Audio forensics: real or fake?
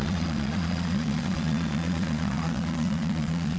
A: fake